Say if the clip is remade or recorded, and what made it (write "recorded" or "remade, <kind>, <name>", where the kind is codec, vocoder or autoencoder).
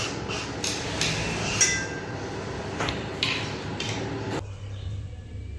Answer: recorded